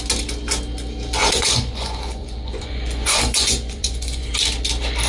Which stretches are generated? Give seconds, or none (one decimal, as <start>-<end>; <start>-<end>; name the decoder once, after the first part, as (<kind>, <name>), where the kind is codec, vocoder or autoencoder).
1.2-4.3 (vocoder, Vocos)